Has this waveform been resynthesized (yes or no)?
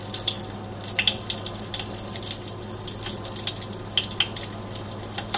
no